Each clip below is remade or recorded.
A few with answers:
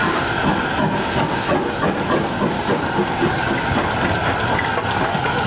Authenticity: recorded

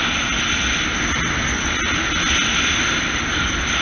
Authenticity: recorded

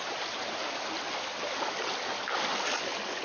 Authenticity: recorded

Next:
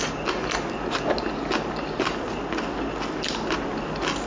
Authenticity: recorded